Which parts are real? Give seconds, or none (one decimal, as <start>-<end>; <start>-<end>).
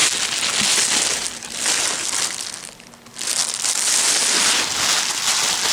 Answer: 0.0-5.7